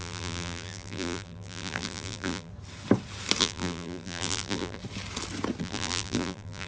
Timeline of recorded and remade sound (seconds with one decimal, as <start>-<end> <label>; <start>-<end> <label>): 0.0-2.5 remade; 2.5-3.4 recorded; 3.4-4.8 remade; 4.8-5.6 recorded; 5.6-6.7 remade